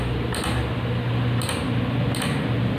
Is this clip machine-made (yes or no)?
no